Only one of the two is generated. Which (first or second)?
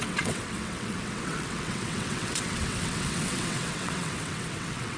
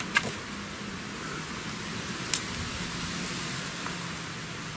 first